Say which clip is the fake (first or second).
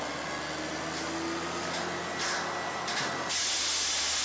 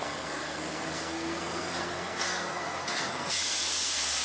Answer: second